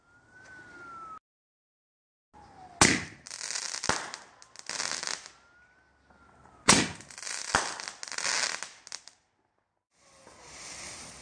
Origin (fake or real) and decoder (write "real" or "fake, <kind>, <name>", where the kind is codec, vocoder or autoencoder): real